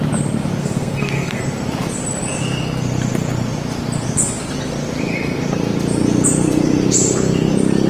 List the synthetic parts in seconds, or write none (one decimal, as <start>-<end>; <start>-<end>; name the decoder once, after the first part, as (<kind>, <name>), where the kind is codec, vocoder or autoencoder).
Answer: 0.6-1.4 (codec, SNAC)